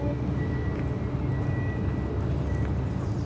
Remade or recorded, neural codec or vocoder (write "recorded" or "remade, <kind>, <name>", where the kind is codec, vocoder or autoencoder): recorded